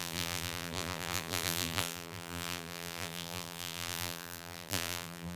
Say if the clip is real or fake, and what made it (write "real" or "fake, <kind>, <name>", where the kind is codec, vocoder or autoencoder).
fake, vocoder, BigVGAN v2